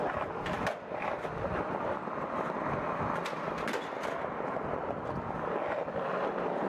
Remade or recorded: recorded